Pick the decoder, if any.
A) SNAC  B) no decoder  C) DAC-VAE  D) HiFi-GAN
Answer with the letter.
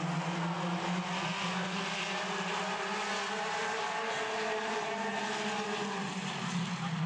B